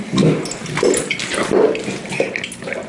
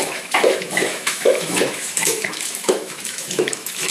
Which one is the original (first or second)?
first